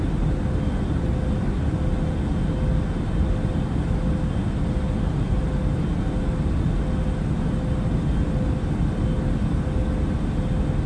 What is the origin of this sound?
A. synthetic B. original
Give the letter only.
B